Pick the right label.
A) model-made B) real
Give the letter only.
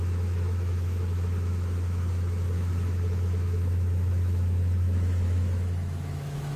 A